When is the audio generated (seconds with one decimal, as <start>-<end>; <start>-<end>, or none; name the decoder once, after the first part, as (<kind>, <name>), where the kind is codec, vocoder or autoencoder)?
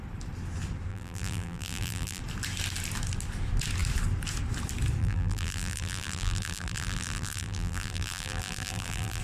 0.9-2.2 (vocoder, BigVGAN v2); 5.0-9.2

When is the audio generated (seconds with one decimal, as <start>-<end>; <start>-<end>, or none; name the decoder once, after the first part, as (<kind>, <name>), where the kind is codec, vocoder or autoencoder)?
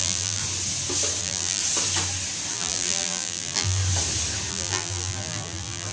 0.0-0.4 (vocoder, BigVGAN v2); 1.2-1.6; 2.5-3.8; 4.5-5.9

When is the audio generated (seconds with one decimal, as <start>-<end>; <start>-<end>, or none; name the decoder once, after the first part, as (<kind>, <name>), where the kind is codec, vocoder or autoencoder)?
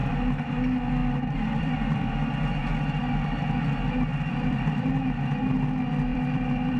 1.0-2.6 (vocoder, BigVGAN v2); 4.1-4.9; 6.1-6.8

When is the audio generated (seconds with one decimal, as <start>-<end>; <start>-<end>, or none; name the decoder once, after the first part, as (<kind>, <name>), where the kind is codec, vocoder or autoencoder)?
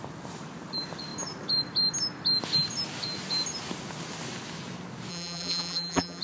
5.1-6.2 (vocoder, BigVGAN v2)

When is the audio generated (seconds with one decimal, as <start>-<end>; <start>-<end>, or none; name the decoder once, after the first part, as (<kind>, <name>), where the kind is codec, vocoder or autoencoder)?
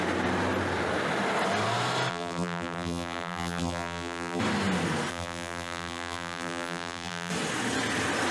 2.1-4.4 (vocoder, BigVGAN v2); 5.1-7.3